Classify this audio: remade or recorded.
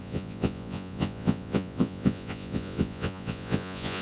remade